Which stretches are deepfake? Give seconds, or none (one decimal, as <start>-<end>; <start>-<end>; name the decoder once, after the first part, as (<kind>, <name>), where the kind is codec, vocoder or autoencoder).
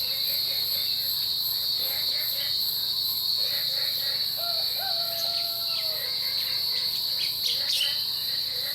none